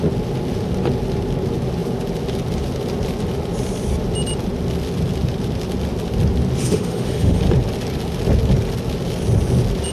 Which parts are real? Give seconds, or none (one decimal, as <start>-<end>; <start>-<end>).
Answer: 0.0-6.6; 7.4-9.9